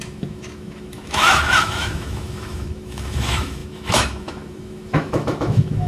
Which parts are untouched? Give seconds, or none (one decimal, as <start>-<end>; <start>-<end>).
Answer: none